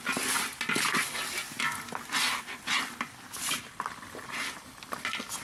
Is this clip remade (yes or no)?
no